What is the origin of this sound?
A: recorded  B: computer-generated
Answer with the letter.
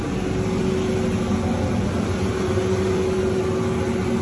A